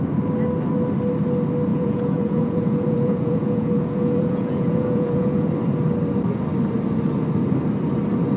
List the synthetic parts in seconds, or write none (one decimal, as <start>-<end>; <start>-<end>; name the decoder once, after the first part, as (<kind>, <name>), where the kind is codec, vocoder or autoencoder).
1.7-5.5 (vocoder, Vocos)